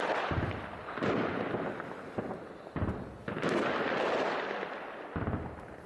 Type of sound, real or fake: fake